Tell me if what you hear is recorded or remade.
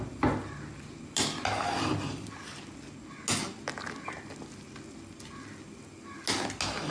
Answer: recorded